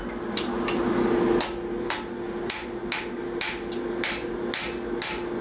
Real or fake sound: real